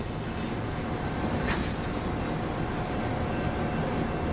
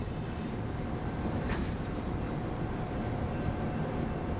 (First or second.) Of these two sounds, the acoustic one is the first